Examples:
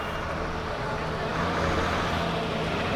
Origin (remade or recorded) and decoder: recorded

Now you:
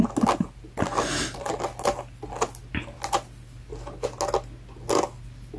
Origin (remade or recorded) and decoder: recorded